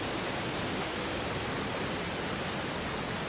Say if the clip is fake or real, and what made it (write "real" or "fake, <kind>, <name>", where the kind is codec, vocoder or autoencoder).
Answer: real